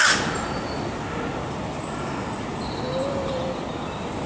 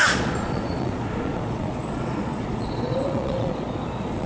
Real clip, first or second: first